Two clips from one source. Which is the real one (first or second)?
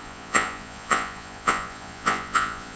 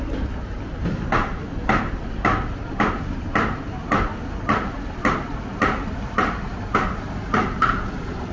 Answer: second